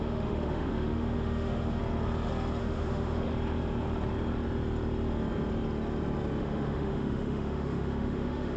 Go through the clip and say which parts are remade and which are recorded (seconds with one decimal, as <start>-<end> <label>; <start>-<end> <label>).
0.0-1.8 remade; 1.8-2.6 recorded; 2.6-3.3 remade; 3.3-6.4 recorded; 6.4-8.6 remade